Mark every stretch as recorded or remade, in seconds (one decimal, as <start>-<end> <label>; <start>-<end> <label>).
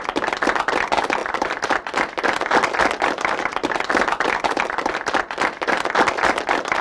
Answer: 0.0-1.2 recorded; 1.2-2.9 remade; 2.9-3.5 recorded; 3.5-4.0 remade; 4.0-6.8 recorded